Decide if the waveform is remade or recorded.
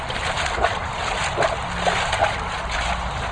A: recorded